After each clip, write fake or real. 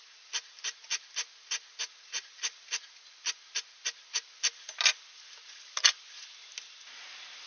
real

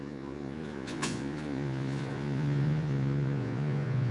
fake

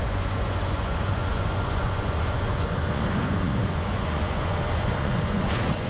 fake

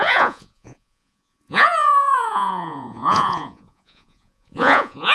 fake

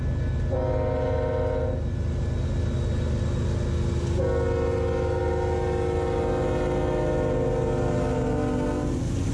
real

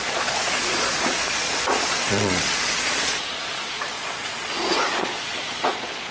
fake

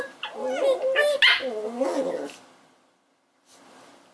real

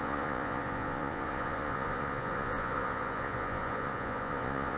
fake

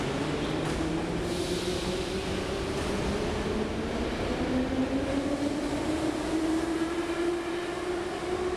real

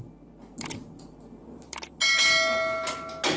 real